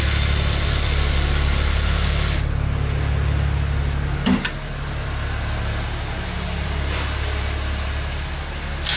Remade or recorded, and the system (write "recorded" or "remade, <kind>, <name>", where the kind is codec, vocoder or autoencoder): recorded